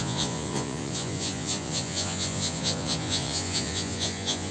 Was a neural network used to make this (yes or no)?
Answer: yes